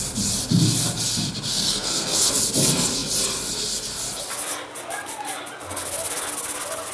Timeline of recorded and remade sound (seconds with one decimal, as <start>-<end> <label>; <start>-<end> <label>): 0.0-1.5 recorded; 1.5-2.3 remade; 2.3-6.9 recorded